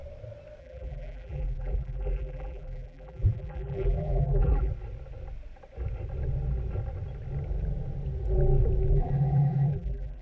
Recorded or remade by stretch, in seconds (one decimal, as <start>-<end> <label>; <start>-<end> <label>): 0.0-0.6 recorded; 0.6-4.7 remade; 4.7-8.9 recorded; 8.9-10.2 remade